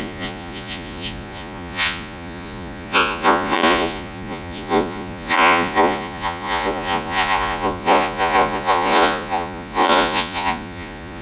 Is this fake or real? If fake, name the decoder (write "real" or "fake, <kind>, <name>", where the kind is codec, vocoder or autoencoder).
fake, vocoder, Vocos